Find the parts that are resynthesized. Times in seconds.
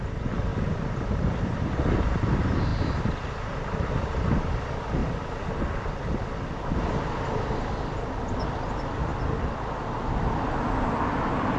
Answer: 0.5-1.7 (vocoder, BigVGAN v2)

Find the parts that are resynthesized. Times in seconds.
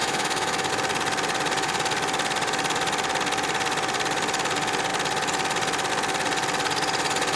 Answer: 0.0-0.7 (autoencoder, DAC-VAE)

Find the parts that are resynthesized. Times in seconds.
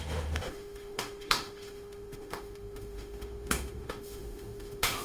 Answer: 0.0-5.0 (autoencoder, DAC-VAE)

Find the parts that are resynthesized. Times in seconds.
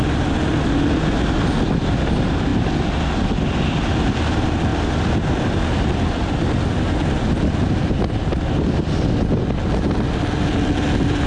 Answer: none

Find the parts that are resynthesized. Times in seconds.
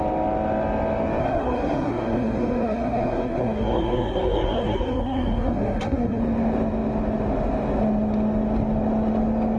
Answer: 1.2-6.2 (codec, SNAC)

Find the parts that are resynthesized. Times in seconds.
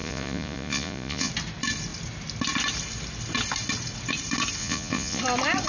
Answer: 0.0-1.3 (vocoder, Vocos); 4.6-5.2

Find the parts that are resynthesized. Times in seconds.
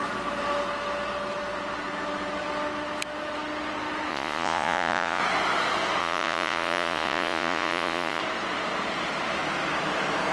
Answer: 4.1-5.2 (vocoder, Vocos); 6.0-8.2